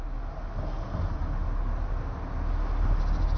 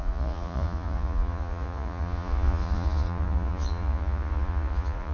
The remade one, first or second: second